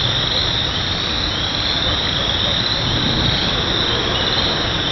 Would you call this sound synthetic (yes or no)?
no